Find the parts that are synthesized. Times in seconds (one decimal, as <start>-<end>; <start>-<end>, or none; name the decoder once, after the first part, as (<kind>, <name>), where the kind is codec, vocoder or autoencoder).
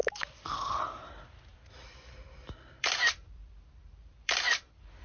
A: 0.0-1.0 (vocoder, BigVGAN v2); 1.5-4.5